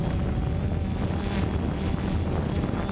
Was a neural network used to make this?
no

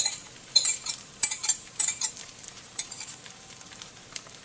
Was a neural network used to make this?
yes